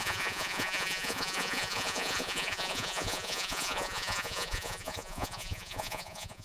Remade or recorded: remade